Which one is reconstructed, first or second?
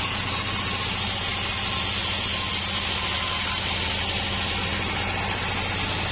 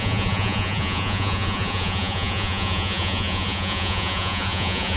second